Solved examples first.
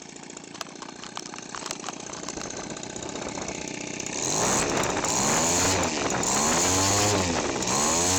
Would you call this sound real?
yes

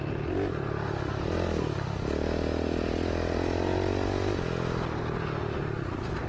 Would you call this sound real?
yes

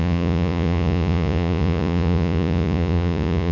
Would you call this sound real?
no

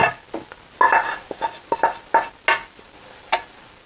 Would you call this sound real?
yes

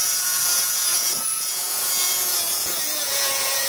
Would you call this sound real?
no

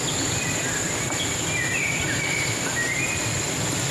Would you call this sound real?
yes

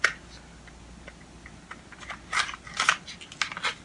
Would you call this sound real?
yes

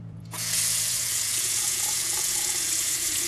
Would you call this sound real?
no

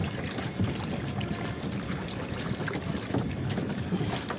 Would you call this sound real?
yes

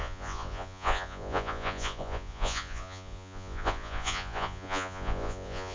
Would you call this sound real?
no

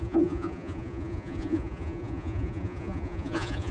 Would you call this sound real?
no